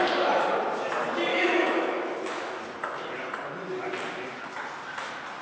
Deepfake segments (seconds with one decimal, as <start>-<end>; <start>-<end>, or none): 1.3-2.6